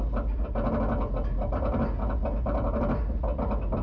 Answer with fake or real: real